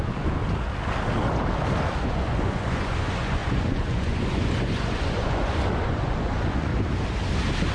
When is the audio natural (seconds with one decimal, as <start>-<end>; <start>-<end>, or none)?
0.4-2.0; 6.7-7.7